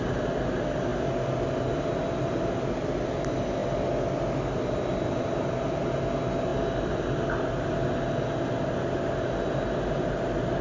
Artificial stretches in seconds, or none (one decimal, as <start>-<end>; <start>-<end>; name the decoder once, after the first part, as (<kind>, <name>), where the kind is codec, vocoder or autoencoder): none